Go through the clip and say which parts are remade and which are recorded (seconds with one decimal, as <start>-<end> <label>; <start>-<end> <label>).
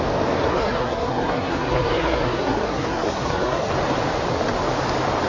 0.0-0.5 recorded; 0.5-3.7 remade; 3.7-5.3 recorded